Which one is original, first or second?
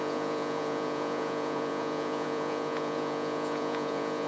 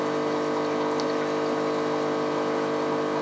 second